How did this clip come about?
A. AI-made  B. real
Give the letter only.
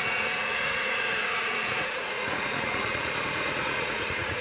A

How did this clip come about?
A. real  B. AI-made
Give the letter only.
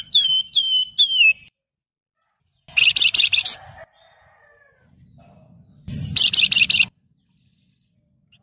A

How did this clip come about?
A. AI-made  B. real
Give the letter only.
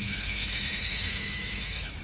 A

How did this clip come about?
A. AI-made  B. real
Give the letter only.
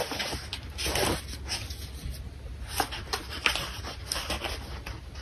B